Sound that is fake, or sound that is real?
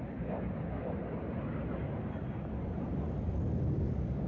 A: real